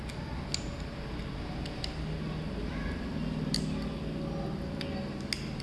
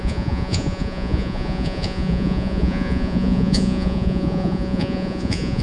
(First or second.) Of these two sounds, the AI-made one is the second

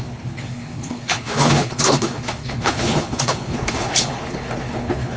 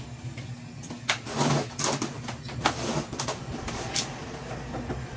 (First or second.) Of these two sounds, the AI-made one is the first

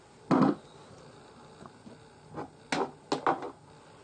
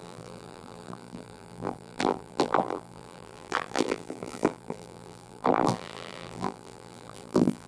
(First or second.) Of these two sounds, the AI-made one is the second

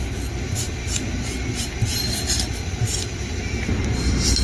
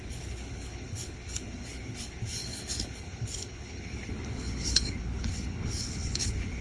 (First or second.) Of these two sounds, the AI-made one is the second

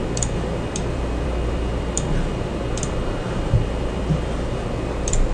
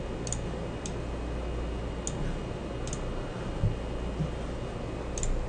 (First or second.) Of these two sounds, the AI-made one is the first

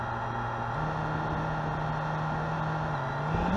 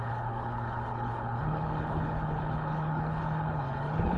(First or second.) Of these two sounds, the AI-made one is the second